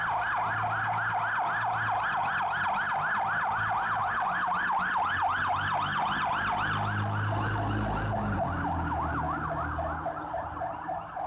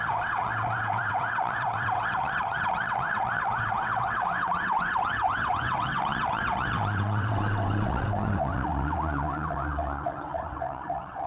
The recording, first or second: first